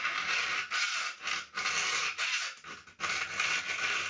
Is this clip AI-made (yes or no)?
no